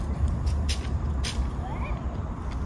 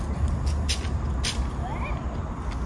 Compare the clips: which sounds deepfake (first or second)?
first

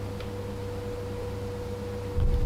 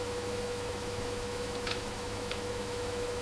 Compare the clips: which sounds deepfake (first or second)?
second